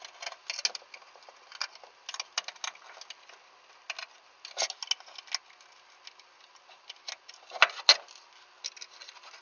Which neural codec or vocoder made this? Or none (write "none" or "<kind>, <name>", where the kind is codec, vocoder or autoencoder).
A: none